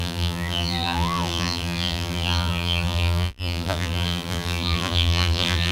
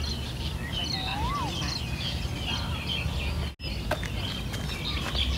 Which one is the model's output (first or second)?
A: first